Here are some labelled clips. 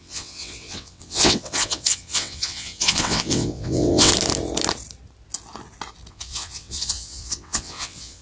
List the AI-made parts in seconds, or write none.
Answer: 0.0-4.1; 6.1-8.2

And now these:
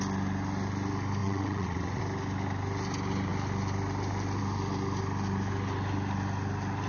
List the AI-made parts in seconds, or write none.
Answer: 1.2-2.0